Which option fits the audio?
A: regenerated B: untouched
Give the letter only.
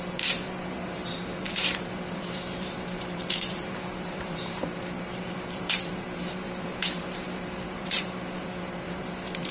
A